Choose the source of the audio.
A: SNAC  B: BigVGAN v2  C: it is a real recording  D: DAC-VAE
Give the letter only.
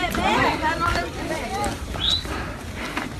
B